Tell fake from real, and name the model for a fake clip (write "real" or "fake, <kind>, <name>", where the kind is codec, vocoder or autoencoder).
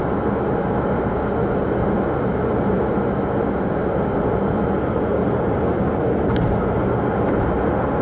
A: real